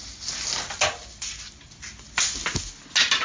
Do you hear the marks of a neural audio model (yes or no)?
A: no